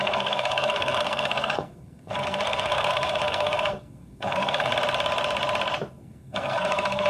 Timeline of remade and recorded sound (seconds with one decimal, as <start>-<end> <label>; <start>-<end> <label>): 0.0-4.7 remade; 4.7-5.9 recorded; 5.9-7.1 remade